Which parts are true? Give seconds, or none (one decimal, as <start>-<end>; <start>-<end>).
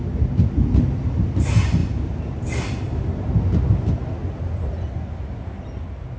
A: 0.0-6.2